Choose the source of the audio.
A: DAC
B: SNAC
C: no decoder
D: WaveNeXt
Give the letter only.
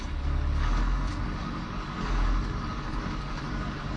A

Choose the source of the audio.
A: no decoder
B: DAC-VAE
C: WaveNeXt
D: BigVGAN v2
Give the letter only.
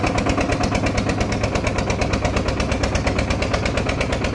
A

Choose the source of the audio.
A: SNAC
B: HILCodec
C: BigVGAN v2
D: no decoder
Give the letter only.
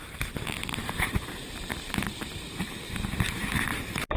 C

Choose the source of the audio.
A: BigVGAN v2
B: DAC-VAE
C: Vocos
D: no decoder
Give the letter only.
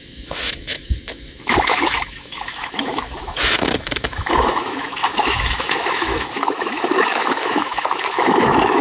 B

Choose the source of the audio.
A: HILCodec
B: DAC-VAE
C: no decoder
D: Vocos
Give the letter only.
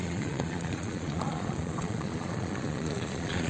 D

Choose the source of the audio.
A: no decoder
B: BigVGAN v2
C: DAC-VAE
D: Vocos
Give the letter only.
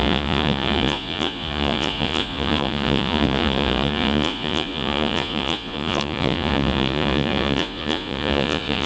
D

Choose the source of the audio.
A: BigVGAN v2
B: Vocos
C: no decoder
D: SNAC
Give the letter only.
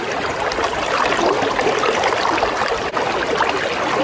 C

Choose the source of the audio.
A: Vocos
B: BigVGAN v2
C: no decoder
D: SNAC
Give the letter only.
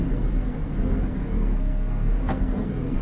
D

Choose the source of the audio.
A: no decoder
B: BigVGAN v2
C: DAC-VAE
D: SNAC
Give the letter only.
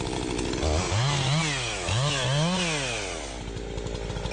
A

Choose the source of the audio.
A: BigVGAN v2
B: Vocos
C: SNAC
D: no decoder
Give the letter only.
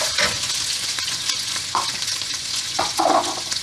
B